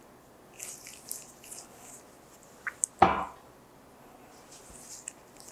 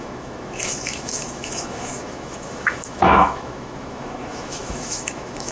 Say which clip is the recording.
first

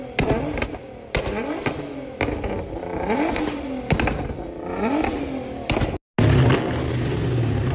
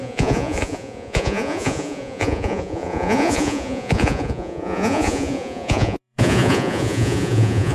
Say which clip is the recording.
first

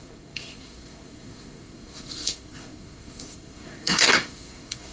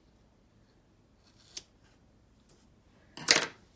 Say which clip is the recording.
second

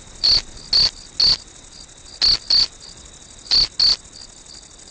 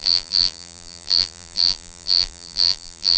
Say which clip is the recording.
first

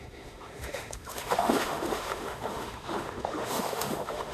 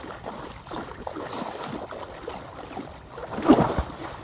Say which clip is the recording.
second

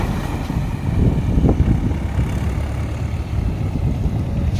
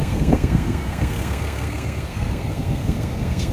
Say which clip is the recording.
first